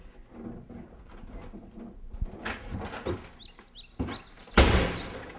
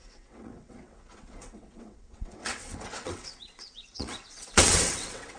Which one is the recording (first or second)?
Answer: first